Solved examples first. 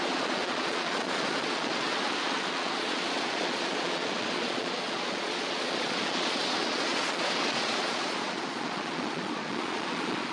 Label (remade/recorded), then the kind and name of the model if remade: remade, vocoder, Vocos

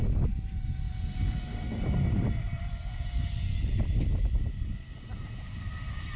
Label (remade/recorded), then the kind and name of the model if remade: recorded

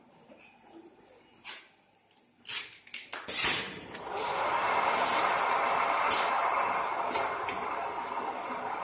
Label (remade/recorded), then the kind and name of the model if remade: recorded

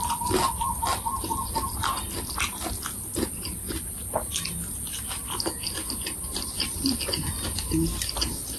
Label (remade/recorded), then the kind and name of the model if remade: recorded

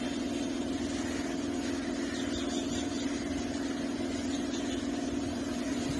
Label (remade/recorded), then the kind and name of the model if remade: recorded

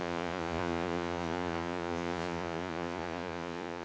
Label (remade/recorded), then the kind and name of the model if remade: remade, vocoder, Vocos